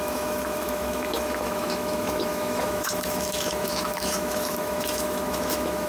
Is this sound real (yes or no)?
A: no